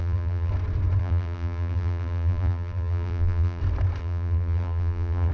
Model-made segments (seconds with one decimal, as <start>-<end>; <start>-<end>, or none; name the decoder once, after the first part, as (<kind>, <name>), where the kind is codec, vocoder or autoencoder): 0.0-0.5 (vocoder, BigVGAN v2); 1.0-3.6; 4.0-5.3